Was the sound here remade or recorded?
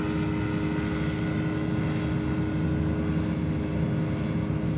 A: recorded